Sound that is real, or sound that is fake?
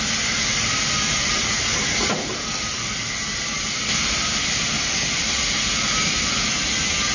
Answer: real